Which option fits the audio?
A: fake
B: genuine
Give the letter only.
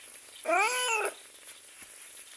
B